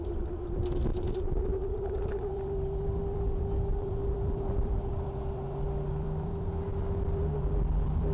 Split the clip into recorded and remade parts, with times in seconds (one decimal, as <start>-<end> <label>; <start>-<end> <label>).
0.0-0.9 remade; 0.9-1.4 recorded; 1.4-8.1 remade